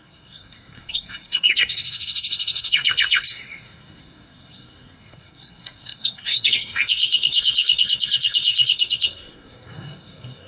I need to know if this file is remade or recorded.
remade